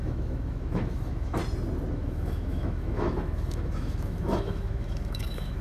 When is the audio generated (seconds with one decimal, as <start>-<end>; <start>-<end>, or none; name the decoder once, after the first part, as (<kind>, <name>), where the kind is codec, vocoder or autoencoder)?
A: 0.0-1.4 (autoencoder, DAC-VAE); 1.9-5.6